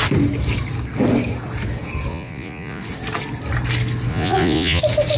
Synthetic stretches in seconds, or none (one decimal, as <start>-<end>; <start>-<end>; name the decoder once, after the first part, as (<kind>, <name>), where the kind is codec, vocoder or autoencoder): 2.1-2.8 (vocoder, Vocos); 4.1-4.8